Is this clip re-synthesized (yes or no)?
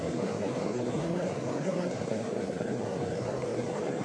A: yes